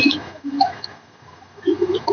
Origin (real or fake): fake